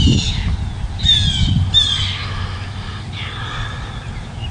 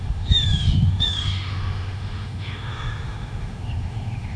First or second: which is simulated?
second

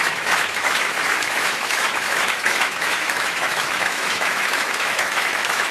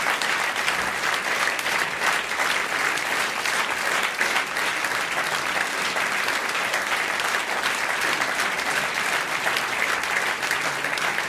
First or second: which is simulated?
first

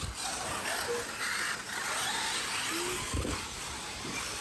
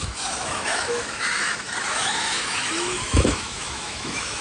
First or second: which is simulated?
second